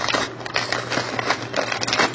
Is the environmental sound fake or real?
real